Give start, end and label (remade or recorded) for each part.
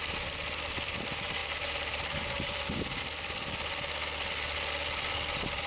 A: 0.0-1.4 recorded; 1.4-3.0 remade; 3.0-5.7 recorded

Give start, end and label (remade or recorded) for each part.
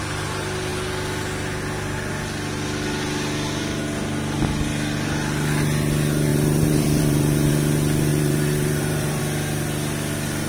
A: 0.0-6.3 recorded; 6.3-7.5 remade; 7.5-8.1 recorded; 8.1-9.2 remade; 9.2-10.5 recorded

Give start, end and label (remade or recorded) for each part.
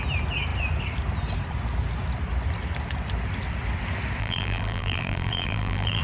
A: 0.0-4.2 recorded; 4.2-6.0 remade